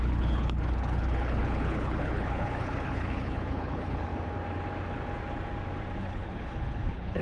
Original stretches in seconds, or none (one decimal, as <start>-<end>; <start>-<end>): 4.1-6.0